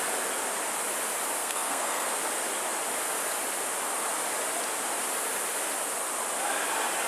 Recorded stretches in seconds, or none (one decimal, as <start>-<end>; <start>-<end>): 0.0-1.4; 2.2-7.1